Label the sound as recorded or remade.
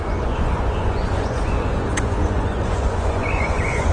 remade